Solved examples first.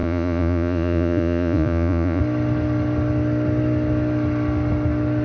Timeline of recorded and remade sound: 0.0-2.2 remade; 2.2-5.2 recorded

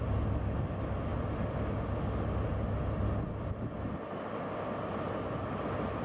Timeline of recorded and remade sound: 0.0-6.0 recorded